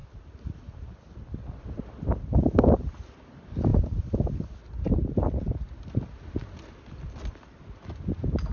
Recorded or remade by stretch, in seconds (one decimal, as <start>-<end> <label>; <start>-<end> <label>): 0.0-8.5 recorded